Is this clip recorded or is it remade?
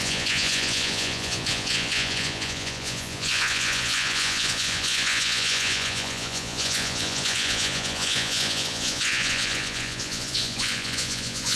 remade